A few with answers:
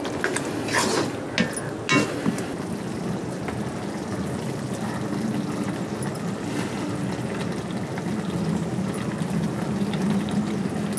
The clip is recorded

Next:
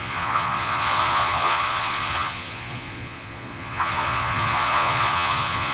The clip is remade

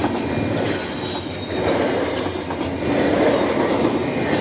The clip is recorded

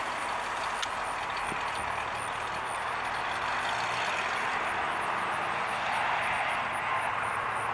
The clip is recorded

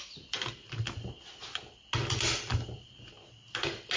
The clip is recorded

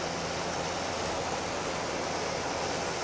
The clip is recorded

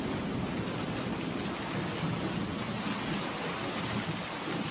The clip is recorded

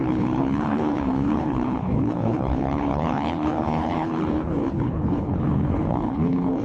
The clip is remade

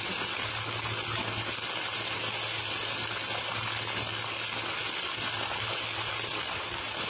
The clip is recorded